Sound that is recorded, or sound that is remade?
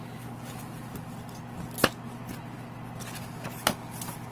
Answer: recorded